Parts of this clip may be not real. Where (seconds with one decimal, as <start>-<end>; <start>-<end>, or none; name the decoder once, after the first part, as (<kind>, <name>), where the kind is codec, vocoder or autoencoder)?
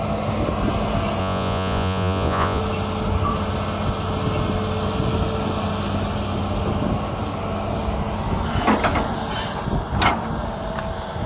1.2-2.6 (vocoder, Vocos)